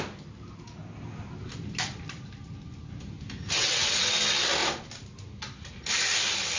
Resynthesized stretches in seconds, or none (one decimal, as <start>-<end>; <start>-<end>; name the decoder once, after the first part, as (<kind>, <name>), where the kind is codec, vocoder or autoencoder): 3.6-4.1 (vocoder, WaveNeXt)